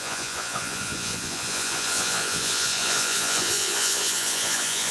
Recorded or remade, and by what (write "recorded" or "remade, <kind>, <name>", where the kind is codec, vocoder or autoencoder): remade, vocoder, Vocos